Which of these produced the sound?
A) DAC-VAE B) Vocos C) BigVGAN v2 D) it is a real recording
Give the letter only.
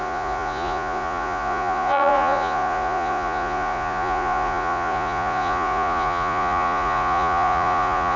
B